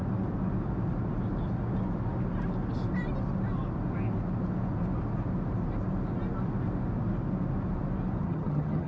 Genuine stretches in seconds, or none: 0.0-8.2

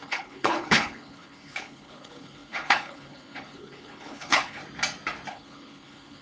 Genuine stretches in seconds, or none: 4.6-5.3

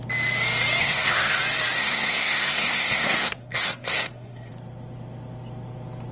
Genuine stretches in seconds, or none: 0.0-0.8; 1.4-1.8; 4.5-6.1

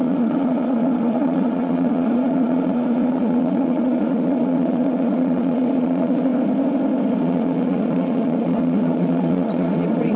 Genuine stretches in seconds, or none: 6.3-7.2

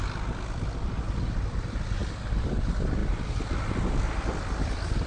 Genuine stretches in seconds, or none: 0.0-5.1

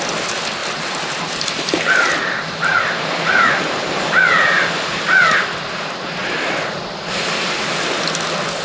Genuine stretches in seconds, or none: 0.0-0.6; 5.0-8.6

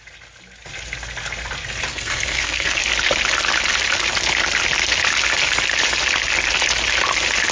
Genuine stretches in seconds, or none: 0.0-1.9; 2.8-7.5